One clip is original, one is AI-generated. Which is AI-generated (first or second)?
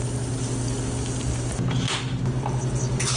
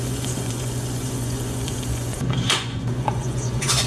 second